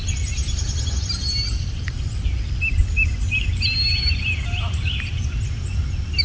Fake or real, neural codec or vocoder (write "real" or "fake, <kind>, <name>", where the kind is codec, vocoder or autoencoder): real